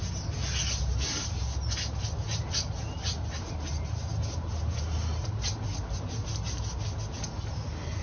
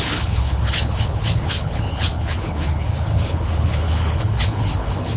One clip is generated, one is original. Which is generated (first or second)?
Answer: second